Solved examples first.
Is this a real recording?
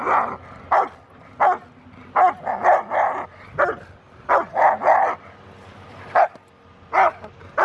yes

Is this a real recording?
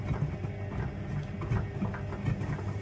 yes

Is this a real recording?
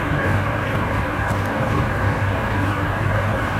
no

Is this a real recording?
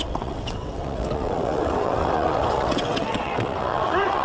no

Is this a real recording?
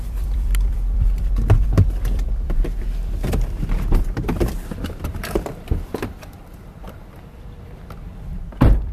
no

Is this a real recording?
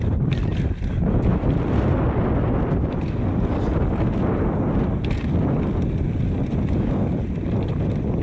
yes